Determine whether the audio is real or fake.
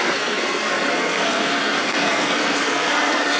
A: fake